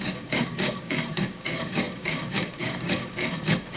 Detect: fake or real fake